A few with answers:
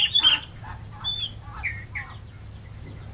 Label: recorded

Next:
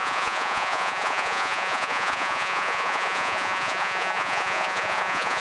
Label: remade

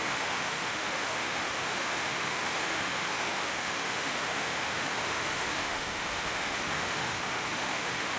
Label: remade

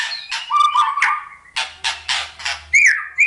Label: recorded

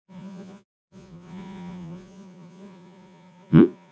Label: remade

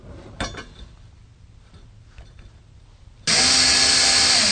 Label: recorded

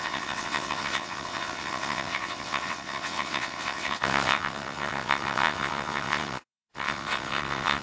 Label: remade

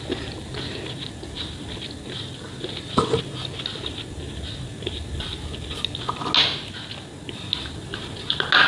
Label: recorded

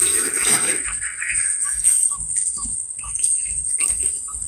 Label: remade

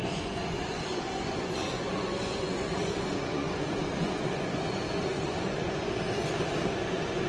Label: remade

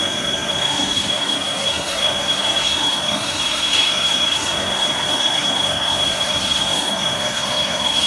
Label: remade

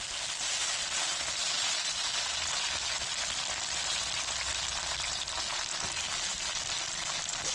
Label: recorded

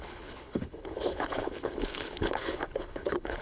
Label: remade